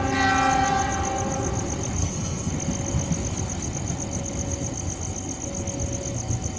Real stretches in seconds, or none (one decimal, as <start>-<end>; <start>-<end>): 0.0-2.0; 2.5-6.6